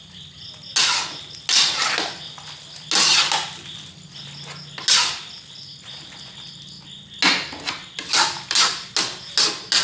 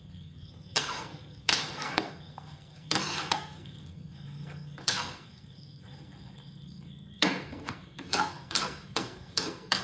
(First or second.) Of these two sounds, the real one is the first